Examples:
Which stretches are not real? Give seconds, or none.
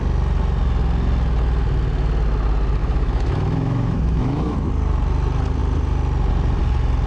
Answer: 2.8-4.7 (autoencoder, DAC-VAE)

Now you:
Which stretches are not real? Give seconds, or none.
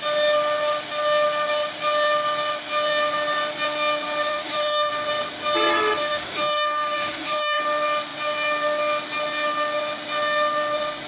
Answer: 4.3-4.9 (autoencoder, DAC-VAE); 6.0-7.6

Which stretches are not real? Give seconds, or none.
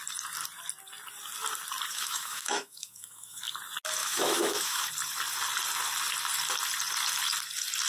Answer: 1.9-3.4 (autoencoder, DAC-VAE); 4.0-4.9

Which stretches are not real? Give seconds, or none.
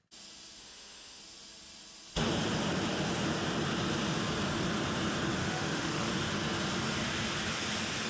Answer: 0.6-1.2 (autoencoder, DAC-VAE); 5.4-6.1